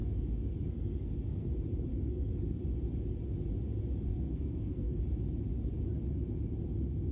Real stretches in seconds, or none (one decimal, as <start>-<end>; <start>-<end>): 1.5-1.9; 2.6-4.1; 5.0-7.1